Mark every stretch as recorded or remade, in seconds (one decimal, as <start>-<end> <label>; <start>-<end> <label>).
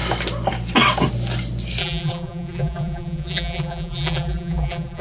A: 0.0-1.8 recorded; 1.8-5.0 remade